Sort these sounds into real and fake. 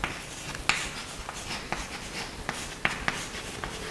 real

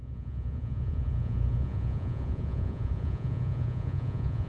fake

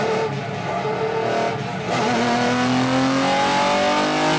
real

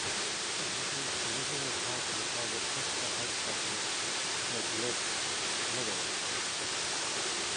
real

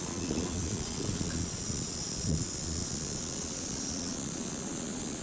fake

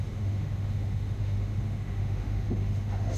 fake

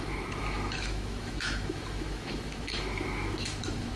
fake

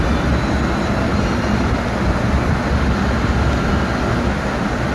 real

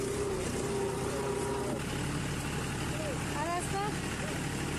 real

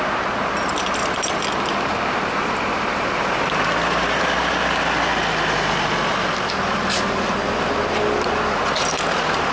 real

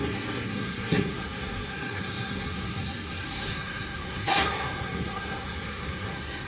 fake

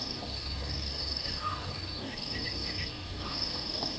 fake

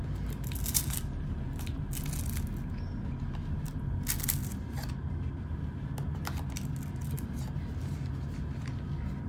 real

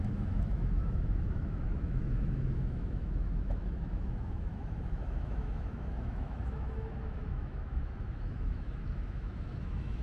fake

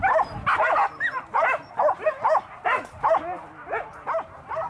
real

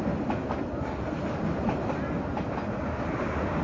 real